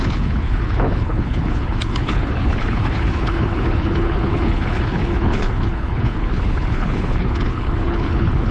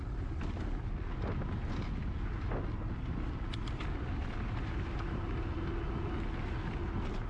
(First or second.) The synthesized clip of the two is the first